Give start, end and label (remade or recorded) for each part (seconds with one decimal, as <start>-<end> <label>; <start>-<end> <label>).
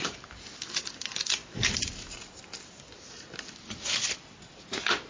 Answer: 0.0-1.4 recorded; 1.4-4.5 remade; 4.5-5.1 recorded